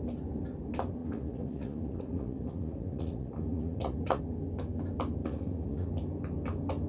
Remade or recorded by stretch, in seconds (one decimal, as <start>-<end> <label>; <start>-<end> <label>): 0.0-1.0 recorded; 1.0-4.2 remade; 4.2-5.2 recorded; 5.2-5.9 remade; 5.9-6.9 recorded

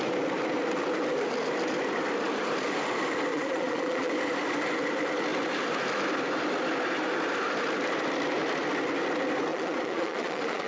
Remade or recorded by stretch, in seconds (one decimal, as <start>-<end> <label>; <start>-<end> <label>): 0.0-3.3 recorded; 3.3-4.1 remade; 4.1-9.5 recorded; 9.5-10.7 remade